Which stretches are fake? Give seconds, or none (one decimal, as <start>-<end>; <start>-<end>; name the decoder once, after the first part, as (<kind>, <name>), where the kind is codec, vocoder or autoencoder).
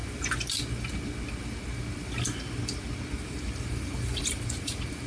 3.1-5.1 (vocoder, BigVGAN v2)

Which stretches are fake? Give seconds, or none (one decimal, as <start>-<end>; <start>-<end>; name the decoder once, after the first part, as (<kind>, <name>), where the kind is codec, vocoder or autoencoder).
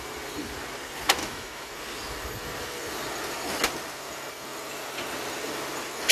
1.2-1.7 (autoencoder, DAC-VAE)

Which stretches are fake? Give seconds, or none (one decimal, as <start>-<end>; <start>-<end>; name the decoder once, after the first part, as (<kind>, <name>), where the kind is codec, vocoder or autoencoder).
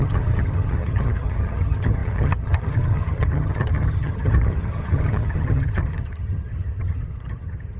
0.0-7.8 (vocoder, HiFi-GAN)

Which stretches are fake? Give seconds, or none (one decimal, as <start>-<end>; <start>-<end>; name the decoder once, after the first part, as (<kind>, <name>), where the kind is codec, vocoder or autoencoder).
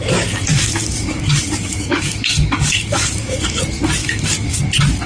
0.5-3.6 (codec, DAC); 4.0-4.6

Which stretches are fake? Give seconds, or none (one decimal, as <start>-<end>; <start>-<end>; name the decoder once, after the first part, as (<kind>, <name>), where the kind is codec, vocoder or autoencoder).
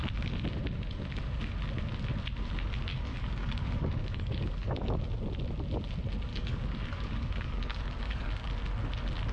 2.9-5.0 (codec, DAC); 6.3-8.3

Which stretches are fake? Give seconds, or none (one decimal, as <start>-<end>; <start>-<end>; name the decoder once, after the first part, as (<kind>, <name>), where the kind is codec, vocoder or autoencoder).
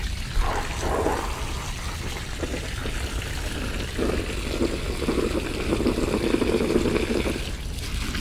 none